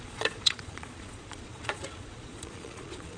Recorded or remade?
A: remade